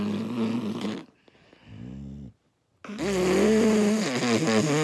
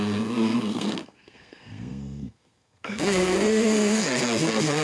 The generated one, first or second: second